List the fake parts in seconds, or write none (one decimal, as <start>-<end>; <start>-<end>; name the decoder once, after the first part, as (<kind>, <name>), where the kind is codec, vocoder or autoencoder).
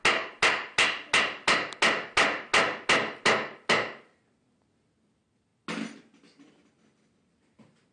none